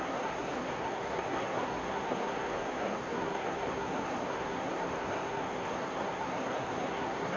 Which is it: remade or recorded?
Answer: remade